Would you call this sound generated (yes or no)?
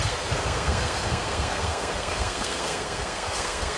yes